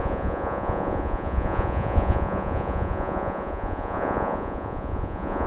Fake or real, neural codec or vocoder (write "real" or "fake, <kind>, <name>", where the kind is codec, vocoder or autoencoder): fake, vocoder, Vocos